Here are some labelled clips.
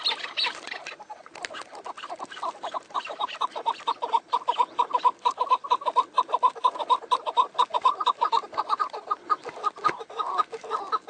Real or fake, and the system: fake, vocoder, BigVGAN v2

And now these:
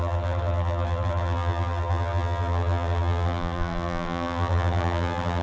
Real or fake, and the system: fake, vocoder, BigVGAN v2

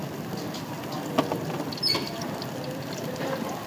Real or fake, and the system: real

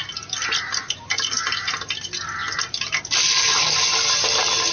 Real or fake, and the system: real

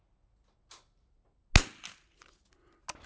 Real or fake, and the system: real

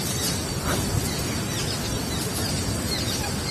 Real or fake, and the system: real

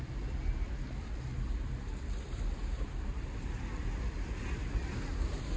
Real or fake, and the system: real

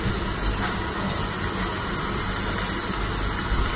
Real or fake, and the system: real